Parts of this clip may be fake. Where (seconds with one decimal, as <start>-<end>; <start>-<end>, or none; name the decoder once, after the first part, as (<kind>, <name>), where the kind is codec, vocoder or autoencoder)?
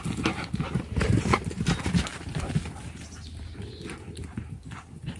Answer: none